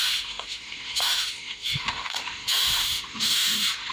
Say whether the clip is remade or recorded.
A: remade